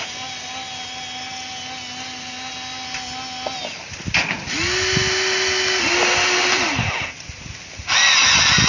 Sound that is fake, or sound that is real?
real